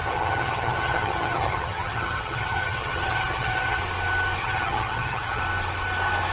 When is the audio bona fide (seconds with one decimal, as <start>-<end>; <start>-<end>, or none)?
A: 3.8-4.4; 5.4-6.3